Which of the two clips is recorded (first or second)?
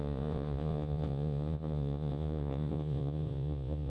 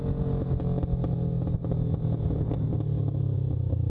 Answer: second